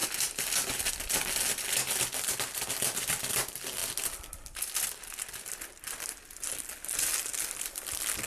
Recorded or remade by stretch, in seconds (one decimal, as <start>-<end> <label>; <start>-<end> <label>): 0.0-0.9 remade; 0.9-8.3 recorded